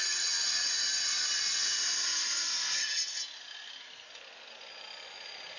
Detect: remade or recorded recorded